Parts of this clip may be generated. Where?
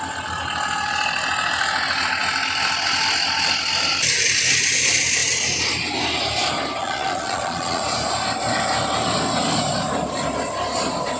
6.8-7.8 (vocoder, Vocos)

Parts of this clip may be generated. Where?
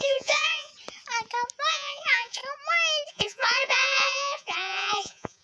0.0-0.7 (vocoder, Vocos); 1.7-2.4; 3.1-5.4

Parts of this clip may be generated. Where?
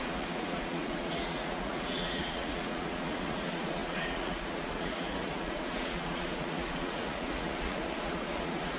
0.0-8.8 (vocoder, Vocos)